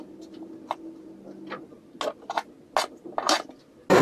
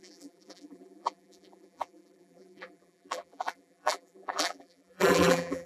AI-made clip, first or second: second